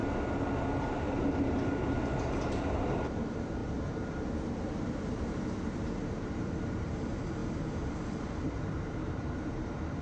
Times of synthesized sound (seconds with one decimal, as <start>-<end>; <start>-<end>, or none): 0.8-10.0